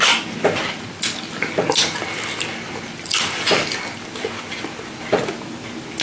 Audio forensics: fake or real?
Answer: real